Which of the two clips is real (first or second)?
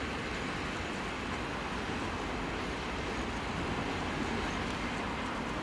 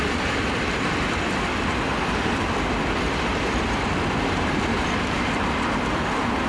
first